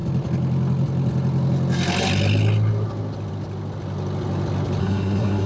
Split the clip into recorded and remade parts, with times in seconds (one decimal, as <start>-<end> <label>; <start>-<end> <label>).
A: 0.0-4.8 recorded; 4.8-5.5 remade